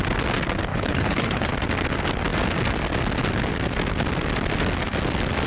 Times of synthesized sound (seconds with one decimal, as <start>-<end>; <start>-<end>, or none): 0.7-1.5